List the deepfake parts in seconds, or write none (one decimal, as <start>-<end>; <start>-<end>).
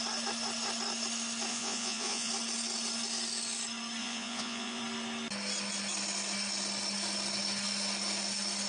1.5-2.3; 4.0-4.8